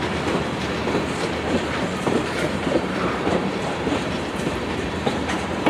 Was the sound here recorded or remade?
remade